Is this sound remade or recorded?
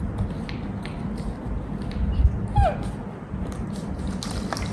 recorded